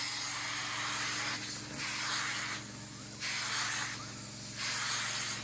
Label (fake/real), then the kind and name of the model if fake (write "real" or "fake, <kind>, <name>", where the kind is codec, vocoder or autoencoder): real